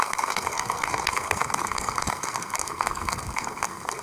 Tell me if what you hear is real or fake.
fake